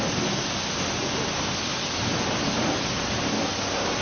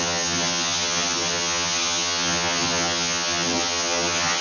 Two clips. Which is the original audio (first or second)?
first